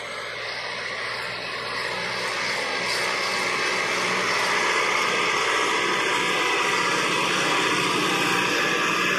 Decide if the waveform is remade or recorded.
recorded